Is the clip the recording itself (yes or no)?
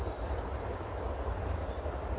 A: yes